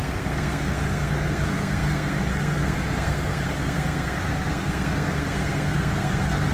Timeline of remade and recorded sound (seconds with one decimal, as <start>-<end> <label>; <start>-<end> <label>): 0.0-6.5 remade